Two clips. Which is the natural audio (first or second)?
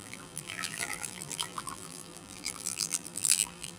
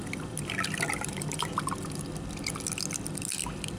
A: second